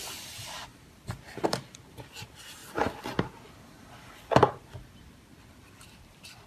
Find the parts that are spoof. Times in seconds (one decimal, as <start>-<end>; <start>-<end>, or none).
0.0-2.6; 4.5-6.5